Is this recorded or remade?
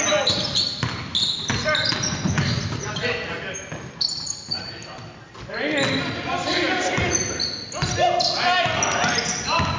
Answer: recorded